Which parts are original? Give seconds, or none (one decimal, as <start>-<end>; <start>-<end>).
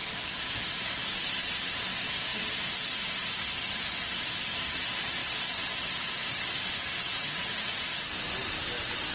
0.0-9.1